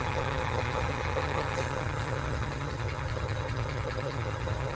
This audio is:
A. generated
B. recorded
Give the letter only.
A